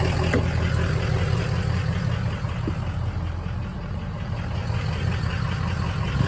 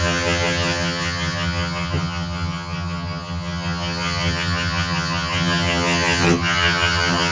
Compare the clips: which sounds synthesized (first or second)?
second